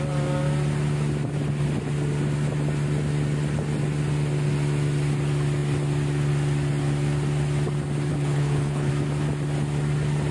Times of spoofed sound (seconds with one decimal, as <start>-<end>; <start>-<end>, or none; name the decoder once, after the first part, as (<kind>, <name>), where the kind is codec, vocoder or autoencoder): 8.1-8.9 (codec, HILCodec)